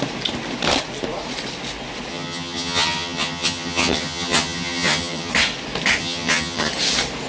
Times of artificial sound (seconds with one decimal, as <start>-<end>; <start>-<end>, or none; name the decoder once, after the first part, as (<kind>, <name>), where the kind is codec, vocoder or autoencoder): 2.1-5.3 (vocoder, HiFi-GAN); 6.0-6.7